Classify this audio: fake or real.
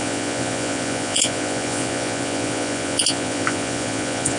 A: fake